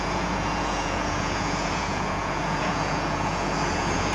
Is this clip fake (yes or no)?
yes